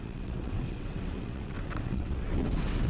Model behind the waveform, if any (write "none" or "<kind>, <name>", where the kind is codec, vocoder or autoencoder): vocoder, WaveNeXt